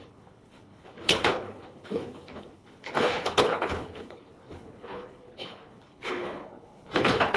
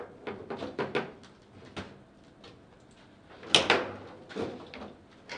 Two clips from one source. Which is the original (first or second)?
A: second